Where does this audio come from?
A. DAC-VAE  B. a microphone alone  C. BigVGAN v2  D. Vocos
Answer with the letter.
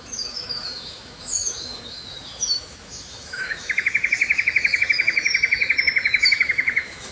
A